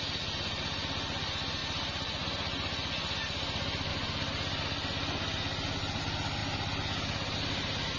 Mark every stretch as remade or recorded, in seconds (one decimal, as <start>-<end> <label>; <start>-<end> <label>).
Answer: 0.0-8.0 recorded